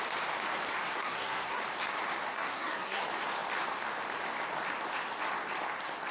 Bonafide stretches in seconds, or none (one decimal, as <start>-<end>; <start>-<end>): 0.0-0.8; 1.6-2.3; 3.0-6.1